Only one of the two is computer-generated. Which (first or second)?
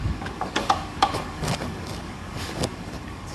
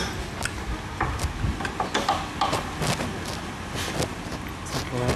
first